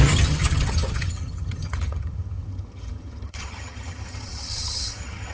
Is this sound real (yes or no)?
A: no